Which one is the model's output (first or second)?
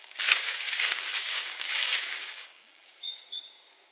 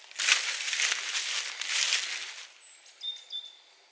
first